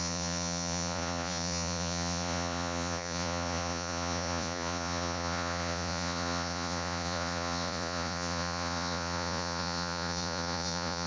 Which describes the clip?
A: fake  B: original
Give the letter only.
A